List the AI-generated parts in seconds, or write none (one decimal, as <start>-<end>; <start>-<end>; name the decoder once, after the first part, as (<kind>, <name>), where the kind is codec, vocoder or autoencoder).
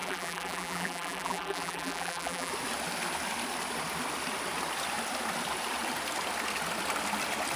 0.0-2.5 (vocoder, BigVGAN v2)